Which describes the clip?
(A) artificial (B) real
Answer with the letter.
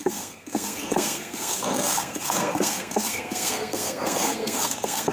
A